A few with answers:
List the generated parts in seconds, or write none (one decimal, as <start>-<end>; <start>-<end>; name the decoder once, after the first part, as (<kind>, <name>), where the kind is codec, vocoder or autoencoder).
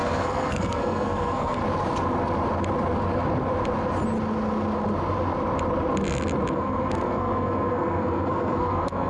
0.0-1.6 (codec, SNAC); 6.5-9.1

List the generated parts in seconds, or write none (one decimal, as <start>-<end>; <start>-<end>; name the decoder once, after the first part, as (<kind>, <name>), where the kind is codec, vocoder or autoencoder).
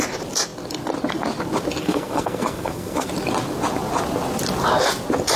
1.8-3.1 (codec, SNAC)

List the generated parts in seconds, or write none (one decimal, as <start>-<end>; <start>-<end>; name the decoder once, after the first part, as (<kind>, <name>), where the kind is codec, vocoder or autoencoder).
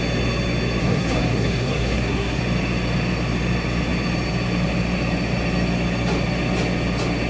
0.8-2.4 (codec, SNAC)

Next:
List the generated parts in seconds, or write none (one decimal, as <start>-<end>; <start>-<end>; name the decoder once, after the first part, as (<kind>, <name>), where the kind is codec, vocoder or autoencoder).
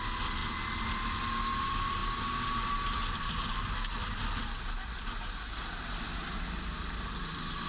none